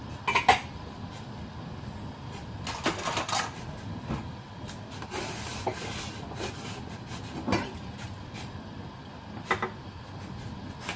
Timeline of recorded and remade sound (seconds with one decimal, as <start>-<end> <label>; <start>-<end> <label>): 0.0-11.0 recorded